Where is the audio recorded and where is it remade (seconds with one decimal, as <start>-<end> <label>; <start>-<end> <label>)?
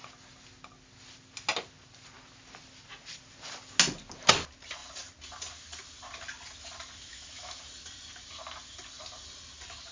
0.0-7.1 recorded; 7.1-7.6 remade; 7.6-9.9 recorded